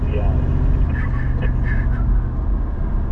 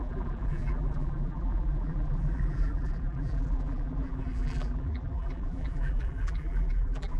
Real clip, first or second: first